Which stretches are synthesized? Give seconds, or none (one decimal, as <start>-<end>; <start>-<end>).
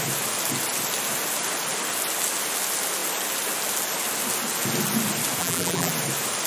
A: 5.4-5.9